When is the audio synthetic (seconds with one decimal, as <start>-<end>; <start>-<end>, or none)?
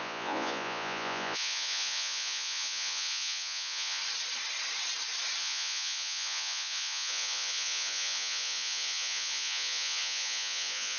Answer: 0.0-4.0; 5.4-11.0